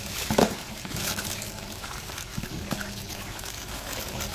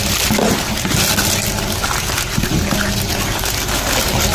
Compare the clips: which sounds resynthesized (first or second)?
first